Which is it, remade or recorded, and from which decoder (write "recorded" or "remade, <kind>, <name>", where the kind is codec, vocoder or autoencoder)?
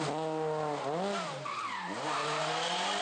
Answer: recorded